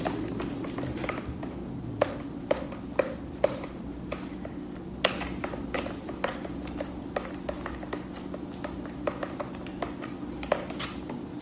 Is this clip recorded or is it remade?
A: recorded